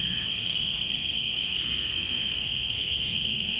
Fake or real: fake